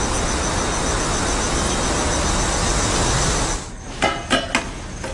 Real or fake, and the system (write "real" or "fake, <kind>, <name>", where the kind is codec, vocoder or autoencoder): real